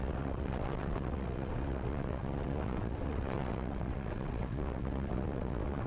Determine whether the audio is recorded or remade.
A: remade